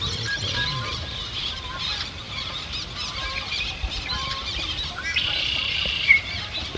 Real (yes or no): no